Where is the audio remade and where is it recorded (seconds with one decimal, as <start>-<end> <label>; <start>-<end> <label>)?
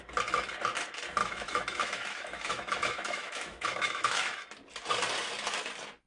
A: 0.0-1.2 recorded; 1.2-4.4 remade; 4.4-6.1 recorded